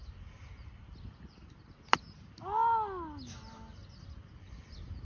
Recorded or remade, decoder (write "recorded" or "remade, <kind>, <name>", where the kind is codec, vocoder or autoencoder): recorded